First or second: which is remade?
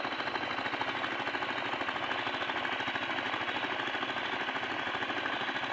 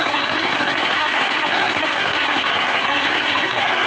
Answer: second